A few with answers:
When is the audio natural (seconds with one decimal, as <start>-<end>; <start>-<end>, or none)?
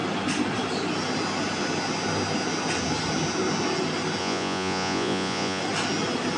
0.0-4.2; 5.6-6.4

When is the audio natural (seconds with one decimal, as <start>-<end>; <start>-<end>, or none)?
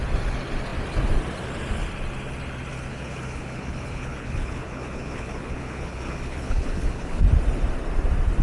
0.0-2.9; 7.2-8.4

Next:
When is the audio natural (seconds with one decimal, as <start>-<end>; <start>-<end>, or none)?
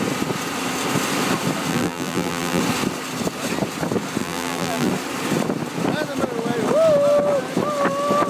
0.0-1.7; 2.6-4.2; 4.9-8.3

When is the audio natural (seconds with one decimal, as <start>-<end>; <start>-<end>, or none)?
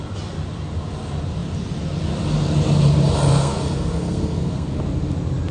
0.0-3.3; 4.8-5.5